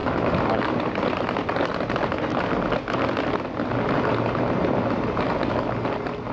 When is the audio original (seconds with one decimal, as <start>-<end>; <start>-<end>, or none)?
0.0-6.3

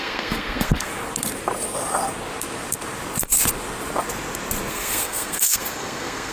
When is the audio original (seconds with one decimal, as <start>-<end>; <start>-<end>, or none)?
0.9-4.7

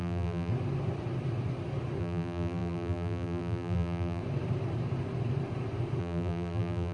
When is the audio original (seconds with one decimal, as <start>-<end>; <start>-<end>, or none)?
0.5-2.0; 4.2-6.0

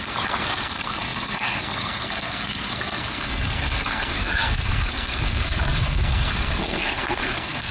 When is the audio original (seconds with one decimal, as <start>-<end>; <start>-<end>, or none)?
none

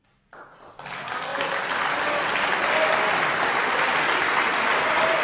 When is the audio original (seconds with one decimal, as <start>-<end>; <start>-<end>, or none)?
0.0-5.2

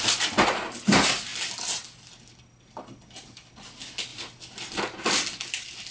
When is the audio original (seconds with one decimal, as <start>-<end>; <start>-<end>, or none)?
0.0-5.9

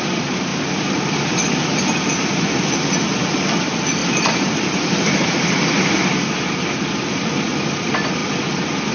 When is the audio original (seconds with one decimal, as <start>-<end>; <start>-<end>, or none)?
0.0-0.5; 2.1-4.0; 6.9-8.9

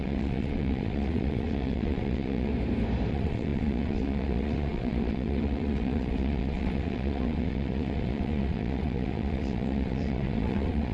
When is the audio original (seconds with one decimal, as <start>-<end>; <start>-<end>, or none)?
2.5-3.1